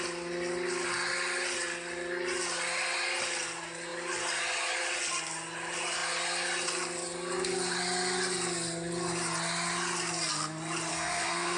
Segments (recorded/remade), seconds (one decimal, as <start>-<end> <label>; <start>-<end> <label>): 0.0-10.9 recorded; 10.9-11.6 remade